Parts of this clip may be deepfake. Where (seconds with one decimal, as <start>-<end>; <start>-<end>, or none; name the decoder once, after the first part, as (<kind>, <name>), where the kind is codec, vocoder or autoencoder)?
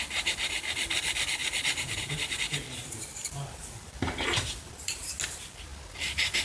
1.4-5.2 (vocoder, BigVGAN v2); 5.7-6.4